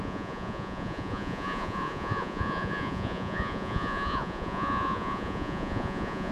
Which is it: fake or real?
fake